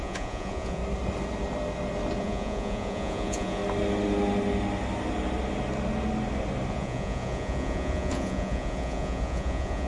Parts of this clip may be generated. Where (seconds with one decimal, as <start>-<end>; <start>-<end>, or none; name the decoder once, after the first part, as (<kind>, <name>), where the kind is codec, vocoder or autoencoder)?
0.0-0.8 (vocoder, Vocos); 2.2-3.6; 6.7-9.9